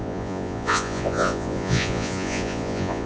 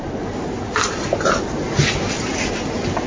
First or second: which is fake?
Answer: first